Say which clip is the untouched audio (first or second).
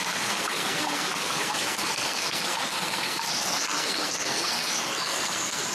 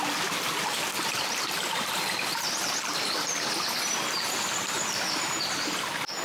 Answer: second